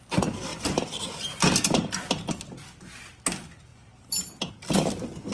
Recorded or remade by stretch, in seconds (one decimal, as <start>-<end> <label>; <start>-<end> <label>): 0.0-0.5 recorded; 0.5-2.3 remade; 2.3-3.7 recorded; 3.7-4.5 remade; 4.5-5.3 recorded

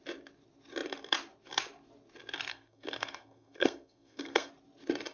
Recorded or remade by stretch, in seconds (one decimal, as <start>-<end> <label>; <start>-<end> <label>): 0.0-2.5 recorded; 2.5-4.5 remade; 4.5-5.1 recorded

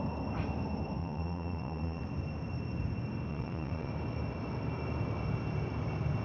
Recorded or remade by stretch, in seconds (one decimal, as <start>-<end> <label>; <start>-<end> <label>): 0.0-1.0 recorded; 1.0-2.0 remade; 2.0-3.3 recorded; 3.3-3.9 remade; 3.9-6.2 recorded

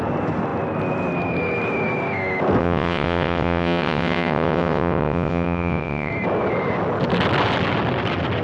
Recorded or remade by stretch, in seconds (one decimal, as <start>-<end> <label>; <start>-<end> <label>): 0.0-2.6 recorded; 2.6-6.1 remade; 6.1-8.4 recorded

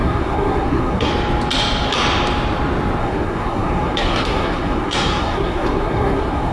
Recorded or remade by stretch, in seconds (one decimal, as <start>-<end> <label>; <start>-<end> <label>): 0.0-1.1 remade; 1.1-3.0 recorded; 3.0-6.5 remade

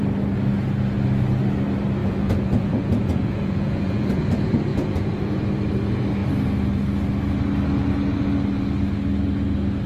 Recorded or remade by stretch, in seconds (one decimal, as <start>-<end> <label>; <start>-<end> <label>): 0.0-2.0 recorded; 2.0-4.2 remade; 4.2-4.7 recorded; 4.7-5.4 remade; 5.4-9.9 recorded